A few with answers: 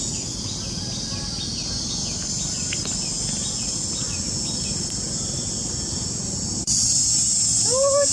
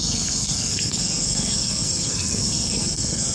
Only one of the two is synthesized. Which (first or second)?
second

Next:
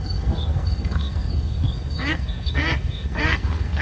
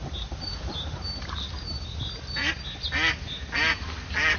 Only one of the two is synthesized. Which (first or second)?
first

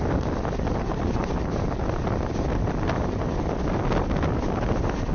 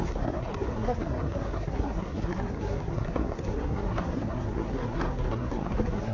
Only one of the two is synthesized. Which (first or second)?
second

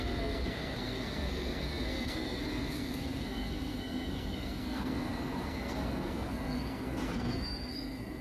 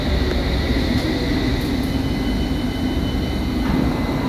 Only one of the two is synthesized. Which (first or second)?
first